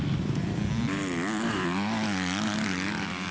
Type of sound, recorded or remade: recorded